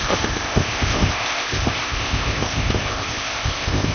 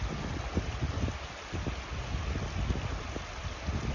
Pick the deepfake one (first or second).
first